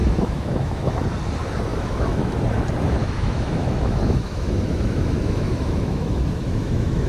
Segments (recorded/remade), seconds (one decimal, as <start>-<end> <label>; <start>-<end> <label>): 0.0-0.9 remade; 0.9-1.7 recorded; 1.7-2.4 remade; 2.4-3.0 recorded; 3.0-7.1 remade